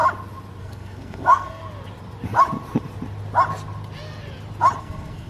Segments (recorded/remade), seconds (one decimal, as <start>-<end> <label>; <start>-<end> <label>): 0.0-0.6 recorded; 0.6-1.6 remade; 1.6-4.8 recorded; 4.8-5.3 remade